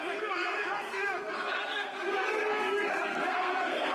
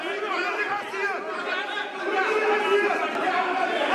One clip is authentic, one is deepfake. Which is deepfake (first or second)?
first